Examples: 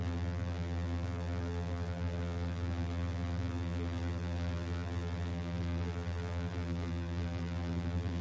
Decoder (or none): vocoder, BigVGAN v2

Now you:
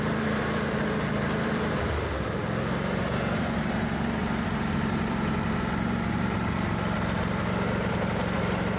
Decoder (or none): vocoder, BigVGAN v2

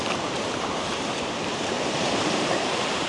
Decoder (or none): vocoder, BigVGAN v2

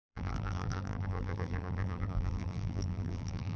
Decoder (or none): vocoder, BigVGAN v2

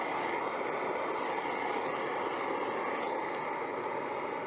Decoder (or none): none